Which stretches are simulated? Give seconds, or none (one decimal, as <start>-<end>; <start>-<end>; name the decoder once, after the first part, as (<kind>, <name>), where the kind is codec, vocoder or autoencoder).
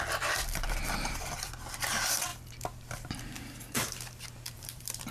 0.0-2.3 (vocoder, BigVGAN v2); 4.5-5.1